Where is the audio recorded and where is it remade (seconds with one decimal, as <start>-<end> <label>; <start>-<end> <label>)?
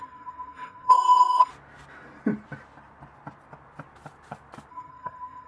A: 0.0-1.5 remade; 1.5-4.7 recorded; 4.7-5.5 remade